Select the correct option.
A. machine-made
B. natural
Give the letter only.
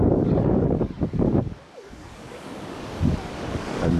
A